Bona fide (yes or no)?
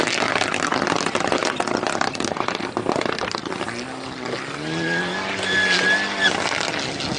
yes